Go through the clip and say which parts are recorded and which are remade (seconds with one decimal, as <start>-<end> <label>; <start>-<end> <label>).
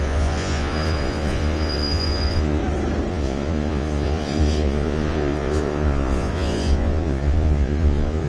0.0-2.6 remade; 2.6-3.1 recorded; 3.1-8.3 remade